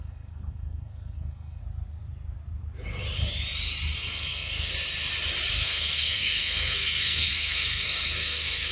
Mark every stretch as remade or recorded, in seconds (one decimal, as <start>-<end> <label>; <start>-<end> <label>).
0.0-1.6 remade; 1.6-4.0 recorded; 4.0-4.7 remade; 4.7-5.5 recorded; 5.5-8.7 remade